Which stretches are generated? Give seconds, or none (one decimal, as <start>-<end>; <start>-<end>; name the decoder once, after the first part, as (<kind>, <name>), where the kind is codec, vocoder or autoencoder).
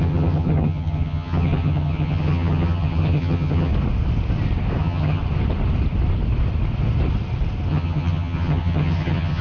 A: 0.0-3.7 (vocoder, HiFi-GAN); 4.8-5.2; 7.7-9.4